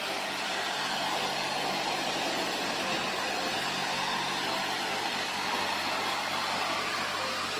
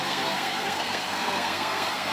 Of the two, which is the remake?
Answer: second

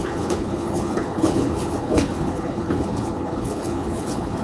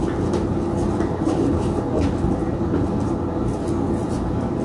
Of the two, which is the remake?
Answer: first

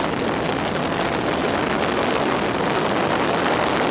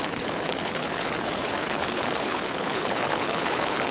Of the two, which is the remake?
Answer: second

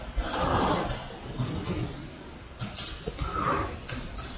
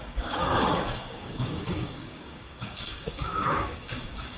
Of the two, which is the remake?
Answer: second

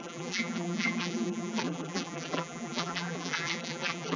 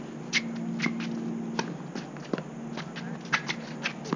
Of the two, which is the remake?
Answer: first